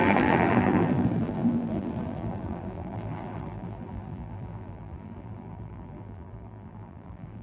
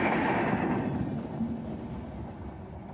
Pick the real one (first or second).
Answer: second